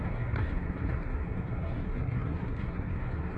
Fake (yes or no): yes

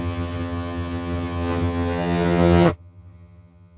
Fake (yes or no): yes